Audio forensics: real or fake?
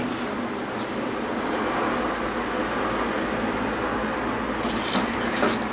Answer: real